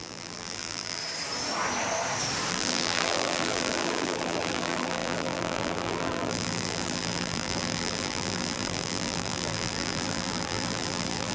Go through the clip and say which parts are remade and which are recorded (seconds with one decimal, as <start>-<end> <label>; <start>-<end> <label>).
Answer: 0.0-1.0 remade; 1.0-2.5 recorded; 2.5-11.3 remade